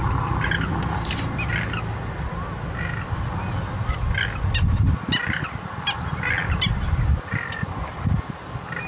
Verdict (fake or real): real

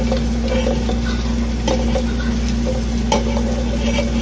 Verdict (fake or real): real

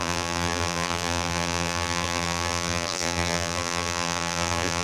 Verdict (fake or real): fake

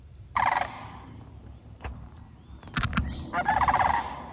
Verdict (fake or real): fake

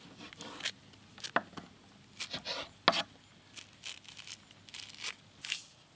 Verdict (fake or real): real